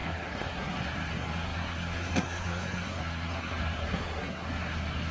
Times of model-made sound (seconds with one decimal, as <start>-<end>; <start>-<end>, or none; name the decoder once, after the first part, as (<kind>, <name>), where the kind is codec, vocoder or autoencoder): 0.0-5.1 (codec, SNAC)